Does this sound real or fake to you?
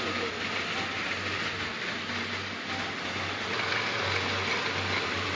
real